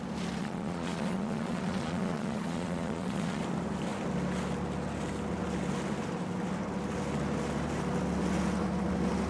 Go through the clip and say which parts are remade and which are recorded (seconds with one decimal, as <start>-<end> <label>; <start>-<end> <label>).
0.0-0.4 recorded; 0.4-3.4 remade; 3.4-9.3 recorded